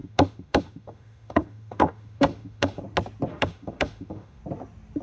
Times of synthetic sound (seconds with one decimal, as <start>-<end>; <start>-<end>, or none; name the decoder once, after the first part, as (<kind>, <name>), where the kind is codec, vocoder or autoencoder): 0.0-2.8 (autoencoder, DAC-VAE); 3.3-4.4